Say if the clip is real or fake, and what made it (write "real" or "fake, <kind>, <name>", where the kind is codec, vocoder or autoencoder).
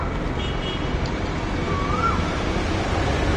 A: real